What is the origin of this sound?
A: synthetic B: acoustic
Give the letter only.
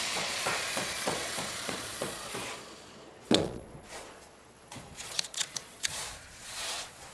A